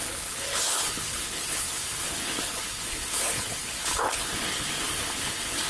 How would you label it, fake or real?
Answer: fake